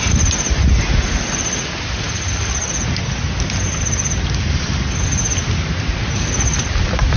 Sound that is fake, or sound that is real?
real